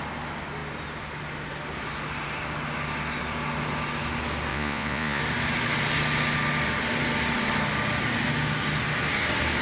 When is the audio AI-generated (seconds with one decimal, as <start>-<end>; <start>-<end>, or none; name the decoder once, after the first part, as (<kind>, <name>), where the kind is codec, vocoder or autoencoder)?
4.5-5.2 (vocoder, Vocos)